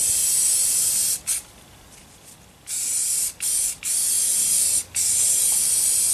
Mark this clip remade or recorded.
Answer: recorded